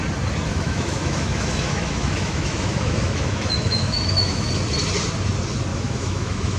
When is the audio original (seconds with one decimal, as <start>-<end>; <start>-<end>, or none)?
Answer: 0.0-0.5; 4.5-5.7